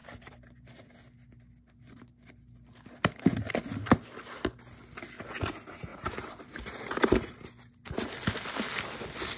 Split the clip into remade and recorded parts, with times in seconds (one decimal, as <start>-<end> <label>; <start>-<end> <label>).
0.0-0.7 remade; 0.7-5.9 recorded; 5.9-7.5 remade; 7.5-9.4 recorded